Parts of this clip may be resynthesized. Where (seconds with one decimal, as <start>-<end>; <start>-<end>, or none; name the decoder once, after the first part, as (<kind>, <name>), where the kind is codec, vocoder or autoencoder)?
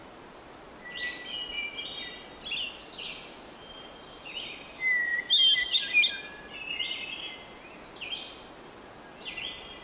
none